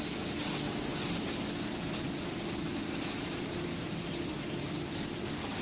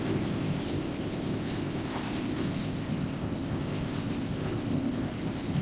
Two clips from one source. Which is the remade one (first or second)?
second